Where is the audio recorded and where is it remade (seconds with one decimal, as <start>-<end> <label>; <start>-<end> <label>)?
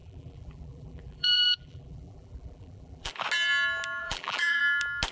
0.0-3.1 remade; 3.1-4.0 recorded; 4.0-4.6 remade; 4.6-5.1 recorded